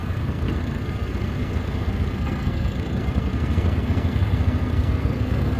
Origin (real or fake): fake